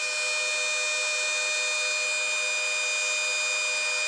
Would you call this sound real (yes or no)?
yes